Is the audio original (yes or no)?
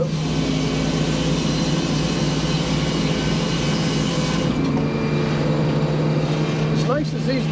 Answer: yes